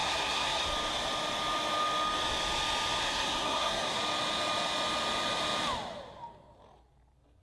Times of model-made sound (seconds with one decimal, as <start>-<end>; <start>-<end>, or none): 0.0-0.6; 3.0-4.0